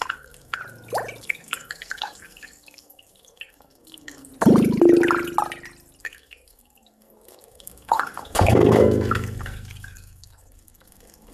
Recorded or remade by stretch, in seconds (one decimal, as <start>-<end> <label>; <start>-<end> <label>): 0.0-0.6 remade; 0.6-1.2 recorded; 1.2-4.3 remade; 4.3-6.0 recorded; 6.0-11.3 remade